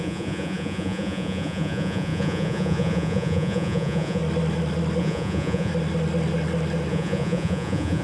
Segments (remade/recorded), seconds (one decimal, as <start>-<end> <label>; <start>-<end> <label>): 0.0-4.2 remade; 4.2-5.0 recorded; 5.0-5.7 remade; 5.7-6.9 recorded; 6.9-8.0 remade